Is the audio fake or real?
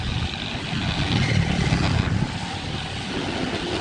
real